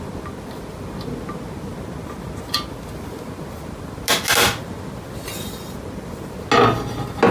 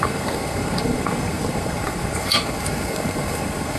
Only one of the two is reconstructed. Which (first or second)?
second